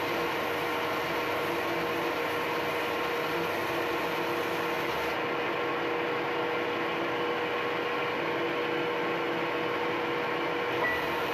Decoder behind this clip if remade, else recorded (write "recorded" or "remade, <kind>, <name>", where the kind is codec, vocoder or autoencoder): recorded